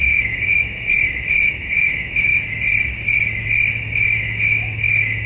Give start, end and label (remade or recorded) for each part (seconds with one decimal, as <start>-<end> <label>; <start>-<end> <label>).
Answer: 0.0-0.9 remade; 0.9-1.5 recorded; 1.5-2.3 remade; 2.3-3.8 recorded; 3.8-5.3 remade